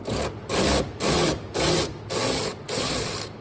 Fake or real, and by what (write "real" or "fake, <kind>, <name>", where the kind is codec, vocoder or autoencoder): real